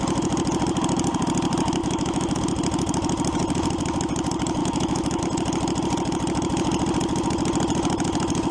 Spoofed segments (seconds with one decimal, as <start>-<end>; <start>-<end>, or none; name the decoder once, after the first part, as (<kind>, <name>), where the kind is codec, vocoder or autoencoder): 1.8-2.4 (autoencoder, DAC-VAE); 4.6-5.2